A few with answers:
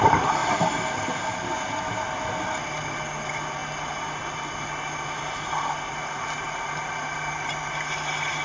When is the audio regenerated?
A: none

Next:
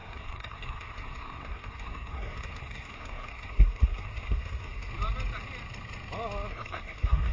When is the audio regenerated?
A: 0.0-4.9; 6.5-7.3

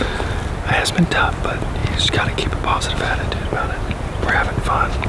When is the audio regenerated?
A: none